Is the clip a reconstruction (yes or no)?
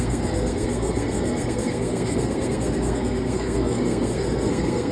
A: yes